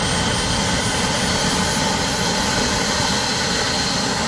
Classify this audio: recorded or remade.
recorded